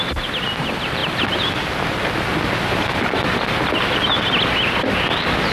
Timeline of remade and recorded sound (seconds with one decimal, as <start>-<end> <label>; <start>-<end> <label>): 0.0-5.5 recorded